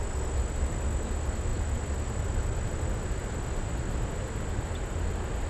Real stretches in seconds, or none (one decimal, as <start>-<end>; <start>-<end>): 0.0-5.5